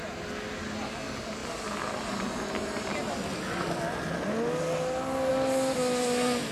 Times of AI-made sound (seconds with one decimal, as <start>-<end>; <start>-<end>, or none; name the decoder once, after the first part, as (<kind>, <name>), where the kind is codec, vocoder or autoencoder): none